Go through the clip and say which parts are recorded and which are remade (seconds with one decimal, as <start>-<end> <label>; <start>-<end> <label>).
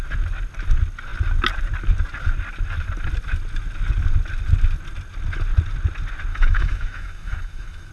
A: 0.0-6.3 recorded; 6.3-7.9 remade